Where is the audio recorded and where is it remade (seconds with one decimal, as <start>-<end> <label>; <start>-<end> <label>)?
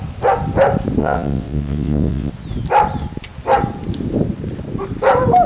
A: 0.0-1.0 recorded; 1.0-2.3 remade; 2.3-5.5 recorded